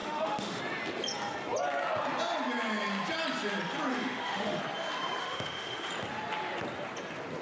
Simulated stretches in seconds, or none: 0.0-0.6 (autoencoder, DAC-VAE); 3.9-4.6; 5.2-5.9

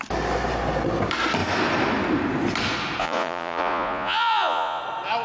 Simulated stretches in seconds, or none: 3.0-4.8 (vocoder, Vocos)

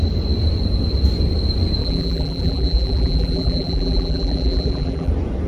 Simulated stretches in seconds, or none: 1.8-5.1 (vocoder, BigVGAN v2)

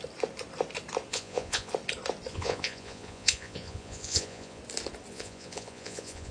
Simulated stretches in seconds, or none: 1.1-1.7 (vocoder, Vocos); 2.3-4.6; 5.1-6.3

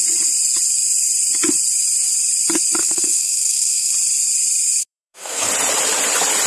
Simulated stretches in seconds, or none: 2.8-3.9 (codec, SNAC); 4.8-5.5